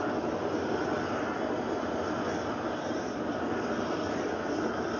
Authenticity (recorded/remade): recorded